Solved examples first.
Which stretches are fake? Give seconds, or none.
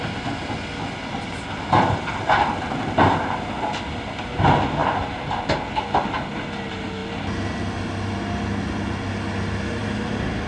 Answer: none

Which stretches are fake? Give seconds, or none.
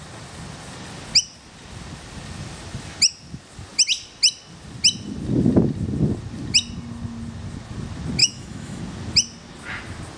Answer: 8.2-8.8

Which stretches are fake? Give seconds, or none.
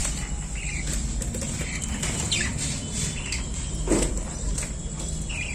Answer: none